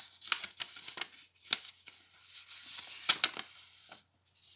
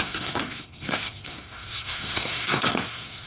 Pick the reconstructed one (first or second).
second